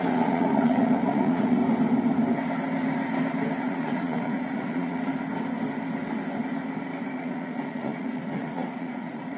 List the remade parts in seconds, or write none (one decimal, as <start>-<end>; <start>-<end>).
0.0-1.6; 3.6-5.1; 7.2-9.4